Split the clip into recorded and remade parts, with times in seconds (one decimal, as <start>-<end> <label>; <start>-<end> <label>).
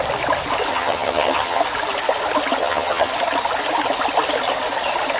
0.0-0.7 recorded; 0.7-1.6 remade; 1.6-2.6 recorded; 2.6-3.1 remade; 3.1-5.2 recorded